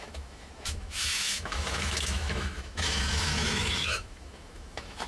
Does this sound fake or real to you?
fake